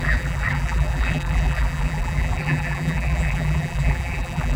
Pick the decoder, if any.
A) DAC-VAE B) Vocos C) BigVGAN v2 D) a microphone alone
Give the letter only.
C